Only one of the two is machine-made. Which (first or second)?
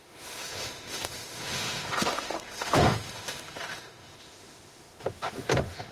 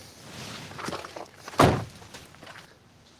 first